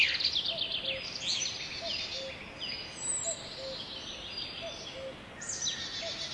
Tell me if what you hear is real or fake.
real